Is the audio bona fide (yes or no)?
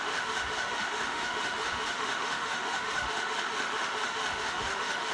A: no